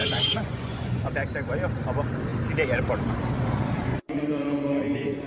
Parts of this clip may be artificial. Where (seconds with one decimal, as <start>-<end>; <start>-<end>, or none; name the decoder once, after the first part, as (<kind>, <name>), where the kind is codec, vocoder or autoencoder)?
0.0-1.1 (vocoder, Vocos); 3.9-5.3